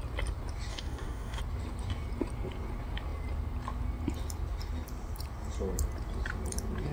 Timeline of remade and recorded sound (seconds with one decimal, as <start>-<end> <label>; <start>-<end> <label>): 0.0-0.7 recorded; 0.7-1.4 remade; 1.4-6.9 recorded

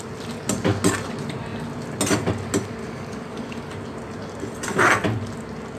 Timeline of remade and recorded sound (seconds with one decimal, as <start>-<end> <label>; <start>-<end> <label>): 0.0-2.8 recorded; 2.8-3.7 remade; 3.7-5.8 recorded

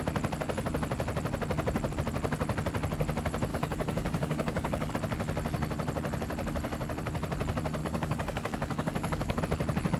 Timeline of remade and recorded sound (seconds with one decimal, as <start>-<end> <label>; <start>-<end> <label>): 0.0-3.5 recorded; 3.5-4.9 remade; 4.9-7.8 recorded; 7.8-9.4 remade; 9.4-10.0 recorded